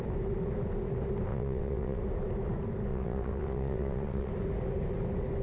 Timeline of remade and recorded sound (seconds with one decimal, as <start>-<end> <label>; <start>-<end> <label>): 0.0-1.3 recorded; 1.3-2.0 remade; 2.0-2.9 recorded; 2.9-4.3 remade; 4.3-5.4 recorded

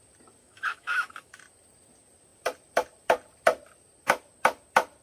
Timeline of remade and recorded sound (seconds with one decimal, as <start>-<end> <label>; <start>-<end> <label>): 0.0-0.4 recorded; 0.4-1.4 remade; 1.4-5.0 recorded

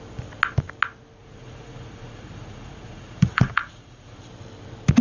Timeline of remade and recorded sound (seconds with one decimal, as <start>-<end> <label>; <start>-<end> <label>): 0.0-1.2 recorded; 1.2-4.2 remade; 4.2-5.0 recorded

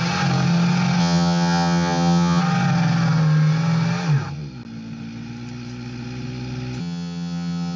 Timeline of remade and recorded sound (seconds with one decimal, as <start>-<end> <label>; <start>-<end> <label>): 0.0-1.0 recorded; 1.0-2.4 remade; 2.4-6.8 recorded; 6.8-7.8 remade